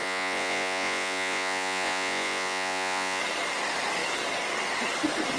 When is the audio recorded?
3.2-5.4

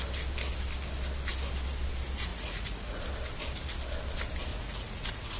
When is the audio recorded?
0.0-2.3; 3.0-4.5